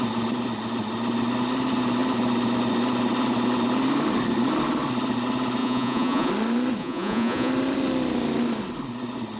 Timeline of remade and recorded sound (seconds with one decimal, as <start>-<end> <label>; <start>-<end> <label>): 0.0-5.6 recorded; 5.6-6.3 remade; 6.3-6.8 recorded; 6.8-7.5 remade; 7.5-9.4 recorded